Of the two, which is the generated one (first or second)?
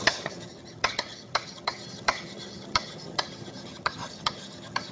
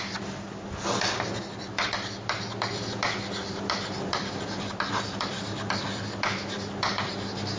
first